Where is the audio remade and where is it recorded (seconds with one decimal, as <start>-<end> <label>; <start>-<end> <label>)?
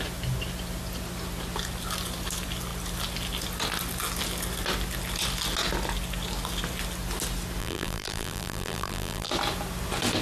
0.0-7.6 recorded; 7.6-9.3 remade; 9.3-10.2 recorded